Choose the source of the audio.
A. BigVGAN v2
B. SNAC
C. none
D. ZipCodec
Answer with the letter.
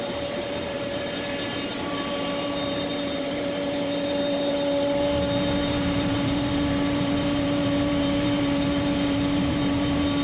A